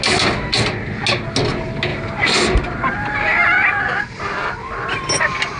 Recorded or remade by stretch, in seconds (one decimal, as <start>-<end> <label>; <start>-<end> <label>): 0.0-1.9 recorded; 1.9-3.8 remade; 3.8-5.6 recorded